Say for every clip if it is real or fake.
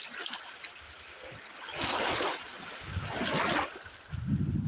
real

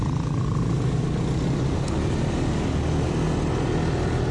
real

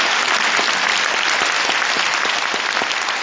real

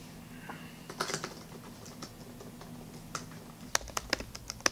real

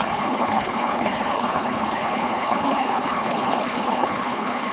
fake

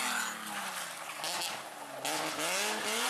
real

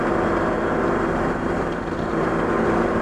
fake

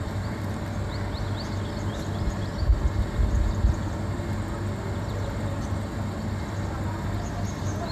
real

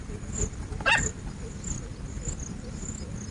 real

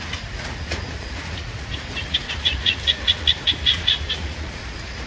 fake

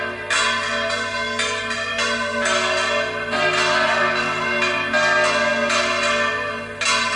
real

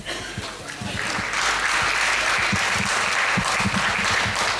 real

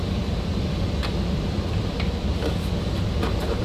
fake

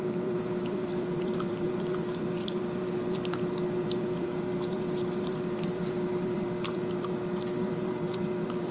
fake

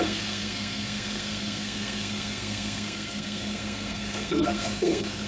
fake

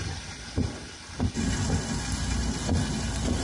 real